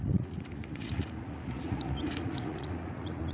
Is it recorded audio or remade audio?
remade